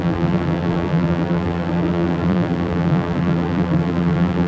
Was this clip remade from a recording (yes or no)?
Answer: yes